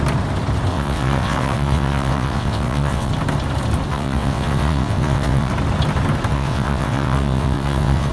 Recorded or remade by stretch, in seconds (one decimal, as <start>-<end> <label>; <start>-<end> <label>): 0.0-0.7 recorded; 0.7-3.1 remade; 3.1-3.9 recorded; 3.9-5.5 remade; 5.5-6.3 recorded; 6.3-8.1 remade